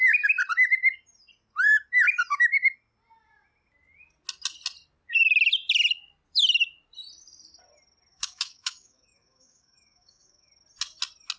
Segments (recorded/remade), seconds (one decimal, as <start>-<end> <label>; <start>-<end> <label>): 0.0-8.1 recorded; 8.1-10.5 remade; 10.5-11.4 recorded